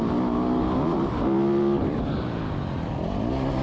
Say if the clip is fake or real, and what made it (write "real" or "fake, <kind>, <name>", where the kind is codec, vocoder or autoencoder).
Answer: real